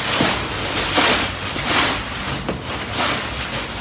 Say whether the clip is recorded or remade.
recorded